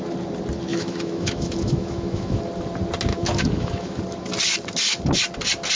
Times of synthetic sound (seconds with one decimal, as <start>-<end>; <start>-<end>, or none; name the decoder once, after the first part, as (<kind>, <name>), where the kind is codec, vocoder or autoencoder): 0.7-2.4 (autoencoder, DAC-VAE); 3.1-4.0